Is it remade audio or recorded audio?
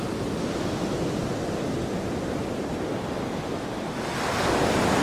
recorded